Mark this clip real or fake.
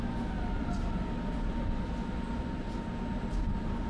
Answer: real